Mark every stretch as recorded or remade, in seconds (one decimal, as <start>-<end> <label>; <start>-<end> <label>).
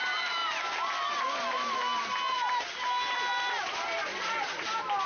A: 0.0-5.1 recorded